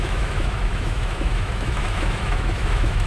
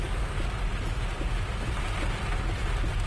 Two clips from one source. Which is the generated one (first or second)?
first